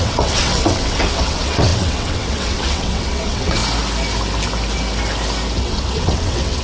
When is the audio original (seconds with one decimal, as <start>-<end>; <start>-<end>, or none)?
3.6-5.6